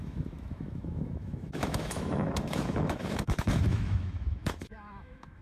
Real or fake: fake